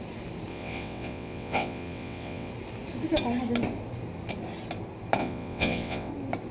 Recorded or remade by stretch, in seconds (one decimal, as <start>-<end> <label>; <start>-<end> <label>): 0.0-0.5 recorded; 0.5-2.5 remade; 2.5-5.2 recorded; 5.2-6.1 remade; 6.1-6.5 recorded